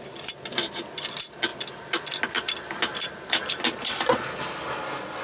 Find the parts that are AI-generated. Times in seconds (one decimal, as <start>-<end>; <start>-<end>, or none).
none